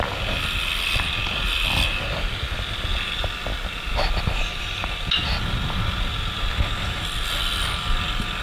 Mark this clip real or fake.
real